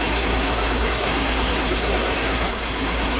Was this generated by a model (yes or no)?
yes